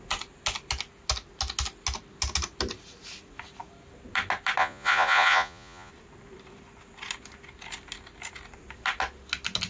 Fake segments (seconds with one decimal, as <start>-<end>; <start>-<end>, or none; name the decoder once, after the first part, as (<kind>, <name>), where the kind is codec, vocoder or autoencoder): 4.6-5.9 (vocoder, Vocos)